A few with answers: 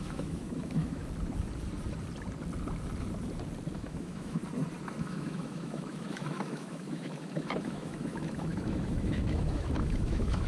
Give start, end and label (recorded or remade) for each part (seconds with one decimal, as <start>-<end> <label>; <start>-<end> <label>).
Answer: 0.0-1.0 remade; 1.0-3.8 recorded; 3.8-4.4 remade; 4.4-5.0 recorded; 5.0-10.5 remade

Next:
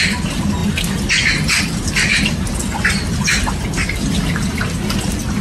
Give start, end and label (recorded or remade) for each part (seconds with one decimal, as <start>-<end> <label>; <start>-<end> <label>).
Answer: 0.0-5.4 recorded

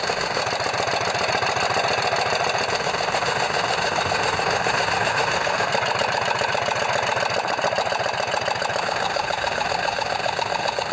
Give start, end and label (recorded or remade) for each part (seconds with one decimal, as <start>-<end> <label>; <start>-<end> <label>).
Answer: 0.0-0.4 remade; 0.4-2.7 recorded; 2.7-5.7 remade; 5.7-8.8 recorded; 8.8-10.9 remade

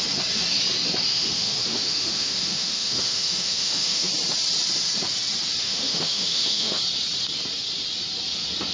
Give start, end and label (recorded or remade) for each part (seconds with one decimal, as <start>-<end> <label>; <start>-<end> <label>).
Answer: 0.0-1.1 recorded; 1.1-4.1 remade; 4.1-5.6 recorded; 5.6-6.8 remade; 6.8-8.7 recorded

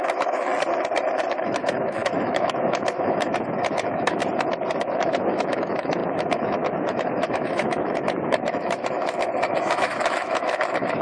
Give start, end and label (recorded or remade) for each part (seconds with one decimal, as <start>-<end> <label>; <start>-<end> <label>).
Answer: 0.0-0.5 remade; 0.5-1.3 recorded; 1.3-4.2 remade; 4.2-4.8 recorded; 4.8-11.0 remade

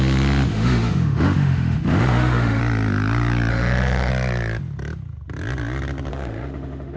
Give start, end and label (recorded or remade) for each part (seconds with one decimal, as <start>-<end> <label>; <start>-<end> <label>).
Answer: 0.0-0.5 recorded; 0.5-2.6 remade; 2.6-3.5 recorded; 3.5-4.1 remade; 4.1-6.1 recorded; 6.1-7.0 remade